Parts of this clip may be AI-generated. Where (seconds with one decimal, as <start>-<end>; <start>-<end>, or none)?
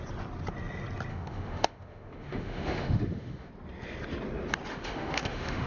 1.1-3.5; 4.7-5.7